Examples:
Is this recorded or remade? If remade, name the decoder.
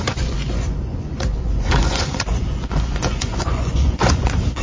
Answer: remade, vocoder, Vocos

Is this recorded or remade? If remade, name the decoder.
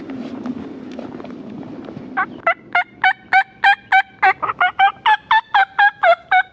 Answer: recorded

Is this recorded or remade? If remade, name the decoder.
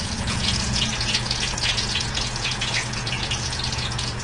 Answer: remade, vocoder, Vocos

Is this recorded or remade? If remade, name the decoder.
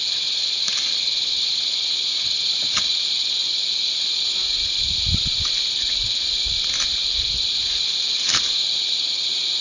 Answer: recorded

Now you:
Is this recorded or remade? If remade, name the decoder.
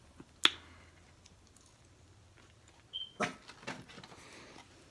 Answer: recorded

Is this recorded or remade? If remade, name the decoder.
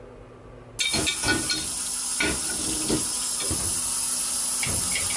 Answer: recorded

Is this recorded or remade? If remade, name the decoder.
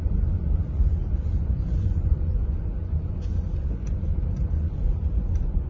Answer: remade, vocoder, Vocos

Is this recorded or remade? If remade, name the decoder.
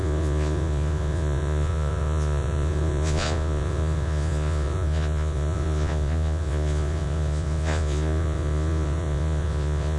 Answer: remade, vocoder, Vocos